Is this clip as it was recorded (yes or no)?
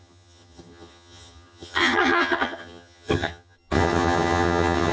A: no